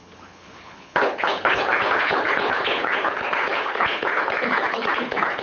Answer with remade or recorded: remade